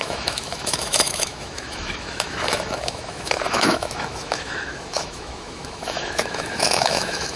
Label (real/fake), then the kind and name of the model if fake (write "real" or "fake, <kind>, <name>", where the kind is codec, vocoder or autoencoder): fake, autoencoder, DAC-VAE